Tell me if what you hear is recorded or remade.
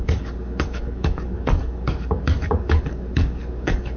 remade